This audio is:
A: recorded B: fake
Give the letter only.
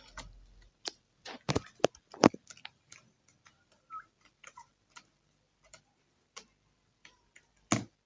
A